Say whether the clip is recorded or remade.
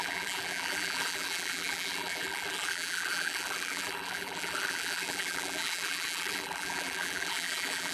remade